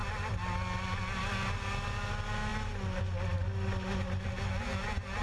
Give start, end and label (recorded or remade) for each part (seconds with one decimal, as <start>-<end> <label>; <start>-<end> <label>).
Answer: 0.0-5.2 recorded